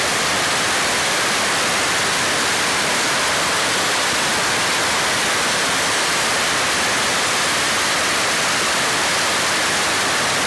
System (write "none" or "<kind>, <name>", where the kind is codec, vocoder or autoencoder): none